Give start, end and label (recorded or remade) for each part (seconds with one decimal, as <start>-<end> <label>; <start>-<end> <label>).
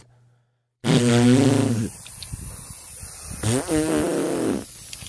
0.0-5.1 recorded